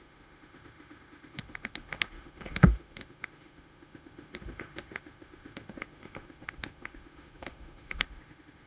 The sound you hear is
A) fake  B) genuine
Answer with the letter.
A